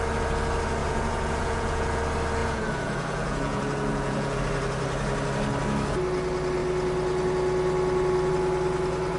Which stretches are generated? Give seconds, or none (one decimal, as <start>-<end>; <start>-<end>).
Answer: 0.8-2.0; 2.4-4.4

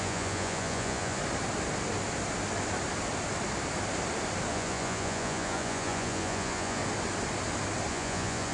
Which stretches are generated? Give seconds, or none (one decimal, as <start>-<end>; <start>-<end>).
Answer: 0.0-1.2; 4.5-6.8; 7.9-8.5

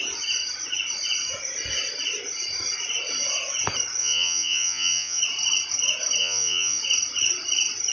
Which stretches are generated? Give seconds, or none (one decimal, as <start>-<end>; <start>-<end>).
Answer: 4.0-5.2; 6.2-6.8

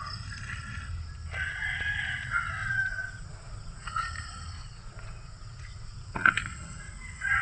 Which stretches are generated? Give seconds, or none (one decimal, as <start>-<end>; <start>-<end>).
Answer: 2.6-4.0; 4.6-6.4